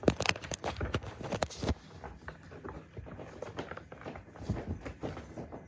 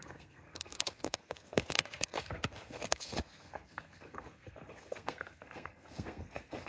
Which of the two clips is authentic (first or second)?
first